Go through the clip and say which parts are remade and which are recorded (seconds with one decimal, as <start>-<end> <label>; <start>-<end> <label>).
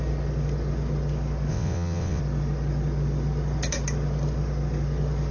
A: 0.0-1.5 recorded; 1.5-2.2 remade; 2.2-5.3 recorded